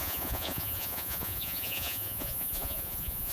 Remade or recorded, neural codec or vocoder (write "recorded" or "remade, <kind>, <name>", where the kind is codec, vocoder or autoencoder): remade, vocoder, Vocos